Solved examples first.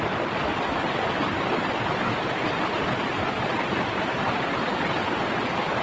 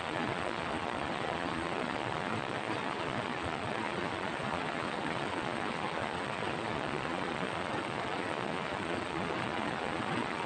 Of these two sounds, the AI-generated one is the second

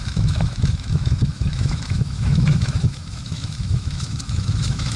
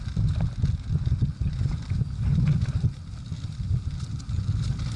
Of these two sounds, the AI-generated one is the first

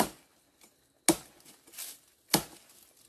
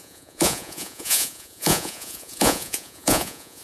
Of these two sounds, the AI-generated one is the second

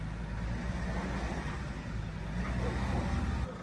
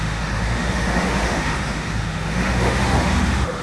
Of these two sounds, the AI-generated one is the second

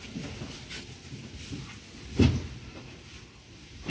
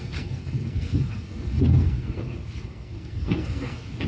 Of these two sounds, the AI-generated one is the second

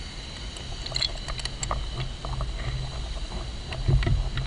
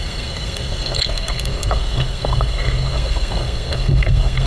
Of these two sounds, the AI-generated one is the second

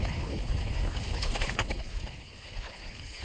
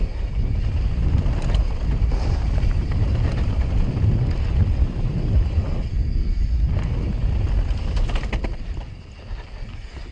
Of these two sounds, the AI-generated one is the first